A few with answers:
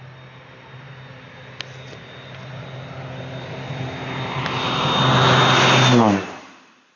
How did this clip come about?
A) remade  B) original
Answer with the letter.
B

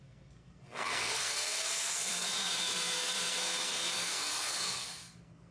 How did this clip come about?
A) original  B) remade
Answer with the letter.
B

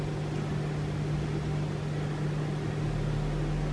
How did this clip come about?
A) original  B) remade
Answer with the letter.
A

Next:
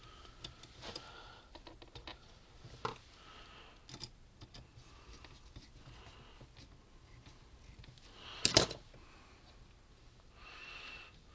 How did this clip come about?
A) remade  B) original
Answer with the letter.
B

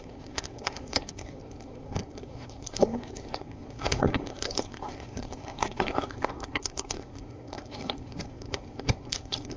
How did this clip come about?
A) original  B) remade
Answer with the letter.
B